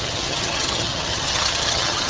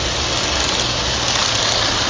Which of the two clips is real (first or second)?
second